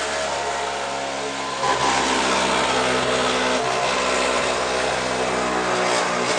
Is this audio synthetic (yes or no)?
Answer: no